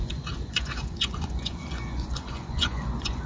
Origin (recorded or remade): remade